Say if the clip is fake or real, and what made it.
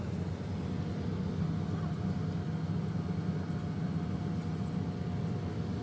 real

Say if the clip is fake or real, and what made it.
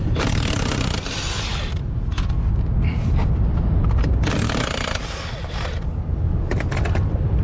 real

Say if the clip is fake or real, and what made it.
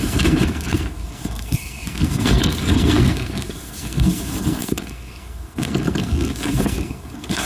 fake, codec, SNAC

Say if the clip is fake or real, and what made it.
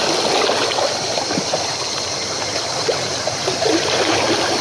real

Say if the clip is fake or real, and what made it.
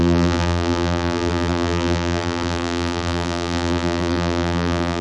fake, vocoder, BigVGAN v2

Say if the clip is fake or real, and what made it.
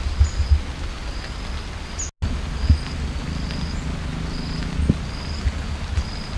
real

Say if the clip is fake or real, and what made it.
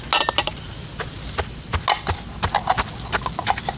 real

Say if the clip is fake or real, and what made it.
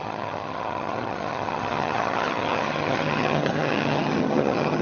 fake, vocoder, HiFi-GAN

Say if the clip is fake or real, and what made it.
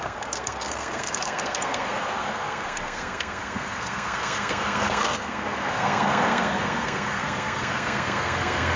fake, codec, SNAC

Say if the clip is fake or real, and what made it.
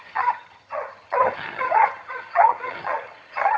fake, vocoder, HiFi-GAN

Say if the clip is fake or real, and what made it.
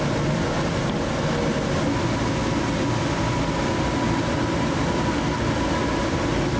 real